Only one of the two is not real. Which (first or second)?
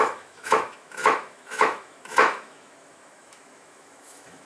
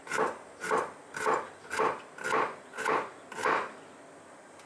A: first